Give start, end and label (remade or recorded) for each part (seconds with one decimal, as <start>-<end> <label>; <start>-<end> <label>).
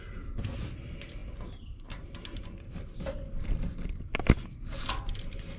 0.0-5.6 recorded